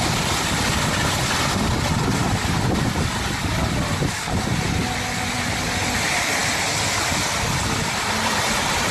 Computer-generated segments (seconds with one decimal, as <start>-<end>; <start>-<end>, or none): none